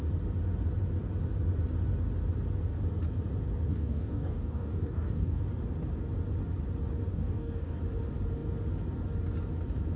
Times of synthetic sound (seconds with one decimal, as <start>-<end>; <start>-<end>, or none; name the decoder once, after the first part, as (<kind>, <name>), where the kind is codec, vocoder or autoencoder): 3.7-5.4 (codec, DAC); 7.1-7.8